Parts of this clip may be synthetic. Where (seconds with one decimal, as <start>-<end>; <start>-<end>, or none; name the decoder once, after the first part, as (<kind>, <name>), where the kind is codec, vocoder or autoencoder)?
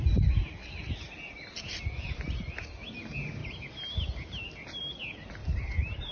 5.4-6.1 (vocoder, BigVGAN v2)